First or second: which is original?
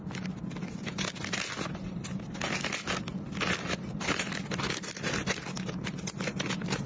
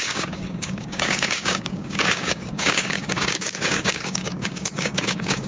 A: first